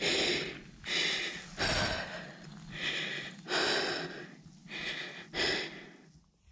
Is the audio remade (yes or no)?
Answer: no